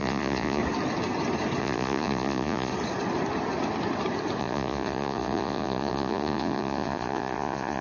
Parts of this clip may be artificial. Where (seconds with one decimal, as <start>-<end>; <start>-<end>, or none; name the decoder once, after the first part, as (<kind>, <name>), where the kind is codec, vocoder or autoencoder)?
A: 0.0-0.6 (vocoder, Vocos); 1.6-2.7; 4.4-7.8